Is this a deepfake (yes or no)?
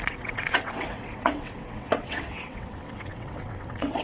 yes